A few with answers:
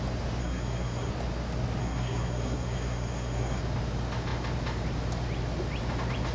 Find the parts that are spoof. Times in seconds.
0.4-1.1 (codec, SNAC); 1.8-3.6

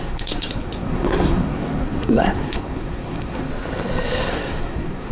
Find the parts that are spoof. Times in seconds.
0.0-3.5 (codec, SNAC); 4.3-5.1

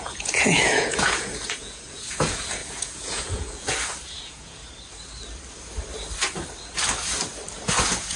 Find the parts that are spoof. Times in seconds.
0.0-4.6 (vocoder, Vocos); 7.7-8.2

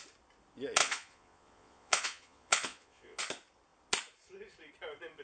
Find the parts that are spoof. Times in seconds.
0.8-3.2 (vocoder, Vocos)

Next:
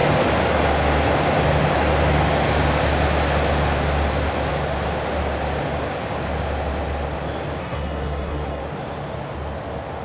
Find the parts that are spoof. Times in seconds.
7.6-8.6 (codec, SNAC)